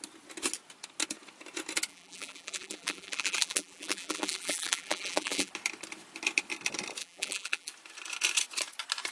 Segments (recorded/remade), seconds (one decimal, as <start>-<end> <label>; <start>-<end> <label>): 0.0-1.9 recorded; 1.9-5.5 remade; 5.5-7.0 recorded; 7.0-7.7 remade; 7.7-9.1 recorded